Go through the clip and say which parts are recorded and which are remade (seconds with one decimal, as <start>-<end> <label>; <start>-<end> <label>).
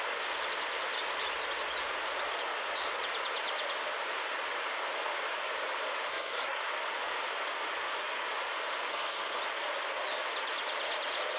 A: 0.0-6.1 recorded; 6.1-6.6 remade; 6.6-8.9 recorded; 8.9-9.4 remade; 9.4-11.4 recorded